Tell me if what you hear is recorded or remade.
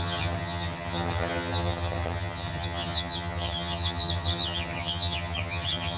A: remade